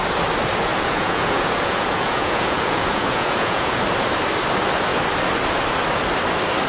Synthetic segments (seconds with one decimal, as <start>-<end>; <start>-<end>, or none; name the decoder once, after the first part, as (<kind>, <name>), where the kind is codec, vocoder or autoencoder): 0.7-3.8 (vocoder, Vocos)